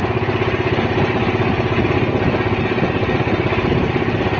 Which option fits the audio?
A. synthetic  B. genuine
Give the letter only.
B